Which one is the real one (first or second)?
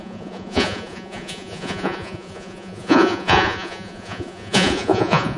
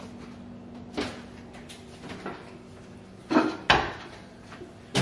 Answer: second